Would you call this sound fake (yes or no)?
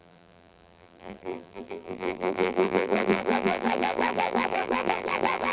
yes